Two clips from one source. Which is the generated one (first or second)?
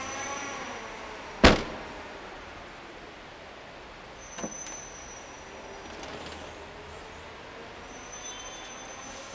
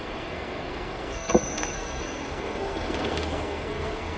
second